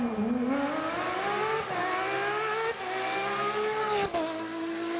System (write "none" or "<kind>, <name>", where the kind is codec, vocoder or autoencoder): none